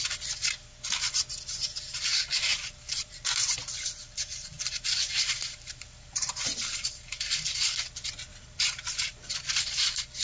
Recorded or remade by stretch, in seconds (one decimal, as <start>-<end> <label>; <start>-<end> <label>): 0.0-2.5 recorded; 2.5-7.7 remade; 7.7-8.3 recorded; 8.3-9.5 remade; 9.5-10.2 recorded